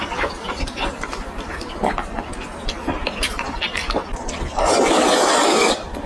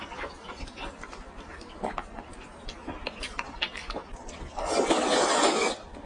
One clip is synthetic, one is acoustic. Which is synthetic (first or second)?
first